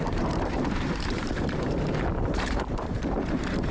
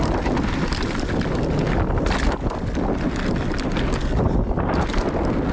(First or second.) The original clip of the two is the second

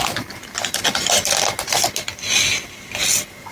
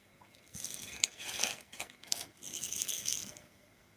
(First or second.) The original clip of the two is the first